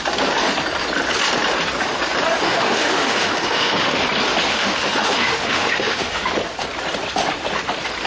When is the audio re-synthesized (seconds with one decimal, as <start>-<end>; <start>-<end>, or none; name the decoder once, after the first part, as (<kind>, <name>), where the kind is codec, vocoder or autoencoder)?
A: 2.4-4.0 (autoencoder, DAC-VAE); 4.5-6.3